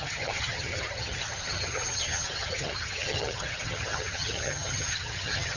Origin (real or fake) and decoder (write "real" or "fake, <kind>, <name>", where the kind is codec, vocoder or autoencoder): fake, vocoder, HiFi-GAN